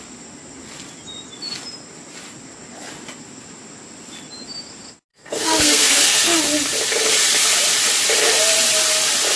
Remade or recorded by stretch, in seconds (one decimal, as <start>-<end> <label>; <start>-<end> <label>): 0.0-5.1 recorded; 5.1-6.4 remade; 6.4-9.4 recorded